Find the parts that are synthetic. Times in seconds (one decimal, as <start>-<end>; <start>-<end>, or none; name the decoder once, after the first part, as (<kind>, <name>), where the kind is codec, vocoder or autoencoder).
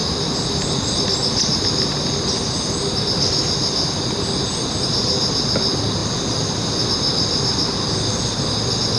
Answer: none